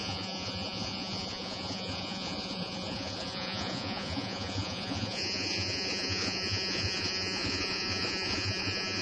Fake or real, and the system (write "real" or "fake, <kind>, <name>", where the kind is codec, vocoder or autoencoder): fake, vocoder, Vocos